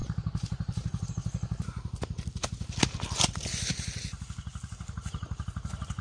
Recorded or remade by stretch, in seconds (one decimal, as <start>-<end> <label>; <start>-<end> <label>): 0.0-1.1 remade; 1.1-6.0 recorded